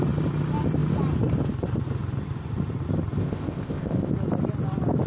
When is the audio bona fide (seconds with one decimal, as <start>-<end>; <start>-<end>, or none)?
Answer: 0.0-3.2; 4.1-5.1